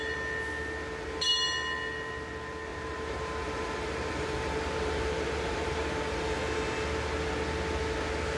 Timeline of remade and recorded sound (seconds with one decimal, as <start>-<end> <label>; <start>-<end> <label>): 0.0-2.7 recorded; 2.7-6.0 remade; 6.0-8.4 recorded